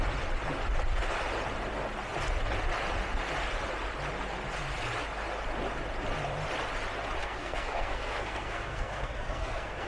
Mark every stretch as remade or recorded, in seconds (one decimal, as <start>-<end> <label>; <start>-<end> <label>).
0.0-7.2 recorded; 7.2-9.9 remade